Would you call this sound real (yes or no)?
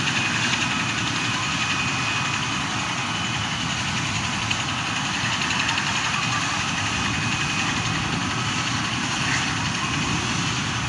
yes